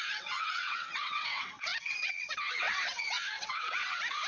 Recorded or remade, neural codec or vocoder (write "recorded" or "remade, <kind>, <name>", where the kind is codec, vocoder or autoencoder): remade, vocoder, WaveNeXt